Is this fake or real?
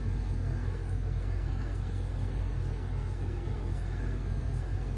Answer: fake